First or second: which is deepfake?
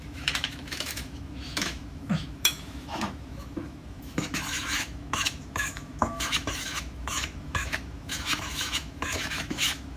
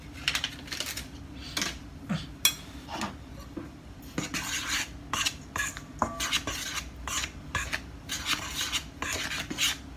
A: first